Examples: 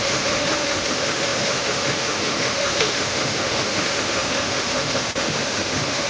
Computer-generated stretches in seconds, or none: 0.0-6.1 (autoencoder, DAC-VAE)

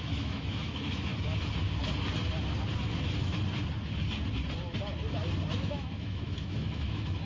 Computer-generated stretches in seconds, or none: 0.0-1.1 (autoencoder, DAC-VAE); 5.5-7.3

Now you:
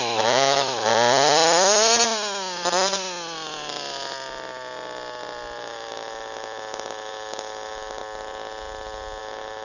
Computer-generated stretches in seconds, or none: 0.0-0.9 (autoencoder, DAC-VAE); 5.6-8.0; 9.2-9.6

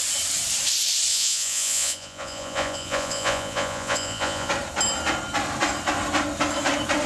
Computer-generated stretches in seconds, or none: 1.1-4.5 (vocoder, Vocos)

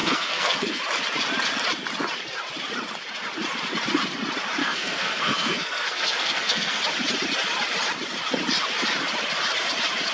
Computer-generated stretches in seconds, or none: 0.0-0.8 (codec, SNAC); 4.6-6.8

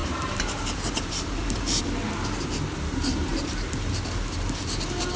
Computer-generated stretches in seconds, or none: 0.0-1.8 (vocoder, BigVGAN v2); 3.1-3.9

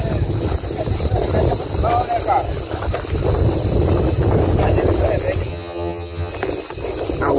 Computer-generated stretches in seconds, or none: 5.5-6.3 (vocoder, HiFi-GAN)

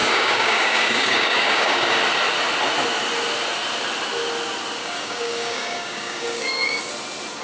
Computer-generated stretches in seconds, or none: 0.0-2.0 (codec, DAC); 4.8-6.8